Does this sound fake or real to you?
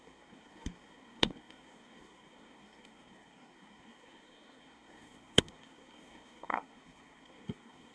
fake